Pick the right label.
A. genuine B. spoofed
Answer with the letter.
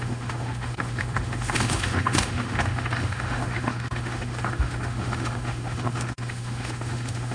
B